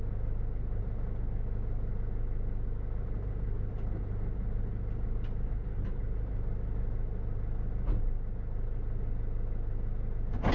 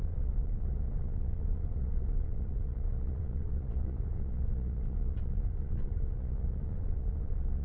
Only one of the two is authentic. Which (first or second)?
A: first